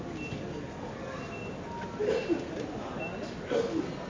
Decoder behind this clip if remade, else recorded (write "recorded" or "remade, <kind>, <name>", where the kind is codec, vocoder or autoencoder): recorded